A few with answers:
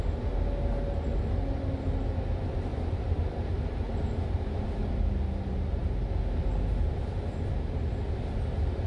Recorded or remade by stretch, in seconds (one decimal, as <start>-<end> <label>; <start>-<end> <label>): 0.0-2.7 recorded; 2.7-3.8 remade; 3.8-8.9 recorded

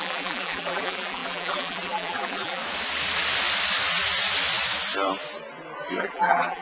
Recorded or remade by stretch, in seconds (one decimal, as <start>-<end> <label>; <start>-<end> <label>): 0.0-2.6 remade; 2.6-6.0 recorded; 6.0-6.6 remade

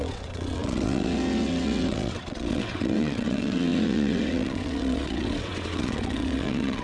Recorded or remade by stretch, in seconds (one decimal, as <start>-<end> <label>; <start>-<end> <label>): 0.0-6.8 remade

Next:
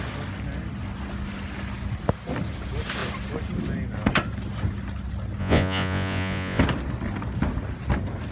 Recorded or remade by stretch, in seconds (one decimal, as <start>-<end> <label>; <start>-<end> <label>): 0.0-5.4 recorded; 5.4-6.6 remade; 6.6-8.3 recorded

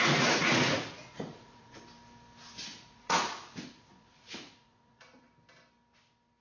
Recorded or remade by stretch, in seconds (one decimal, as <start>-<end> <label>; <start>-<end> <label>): 0.0-1.8 remade; 1.8-2.7 recorded; 2.7-5.2 remade; 5.2-6.4 recorded

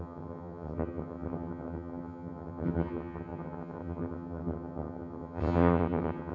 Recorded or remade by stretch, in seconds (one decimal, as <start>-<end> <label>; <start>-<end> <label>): 0.0-6.3 remade

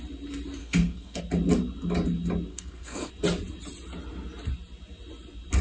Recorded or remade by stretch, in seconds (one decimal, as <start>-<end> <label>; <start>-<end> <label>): 0.0-0.6 recorded; 0.6-1.2 remade; 1.2-2.5 recorded; 2.5-3.1 remade; 3.1-5.6 recorded